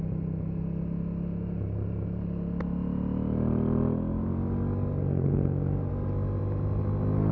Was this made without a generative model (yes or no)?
yes